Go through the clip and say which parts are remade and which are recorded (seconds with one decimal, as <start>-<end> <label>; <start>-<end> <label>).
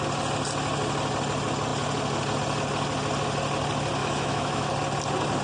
0.0-4.0 recorded; 4.0-4.7 remade; 4.7-5.4 recorded